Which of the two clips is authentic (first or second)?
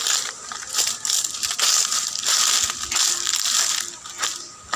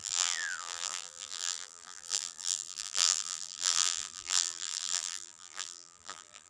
first